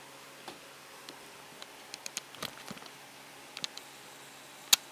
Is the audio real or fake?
real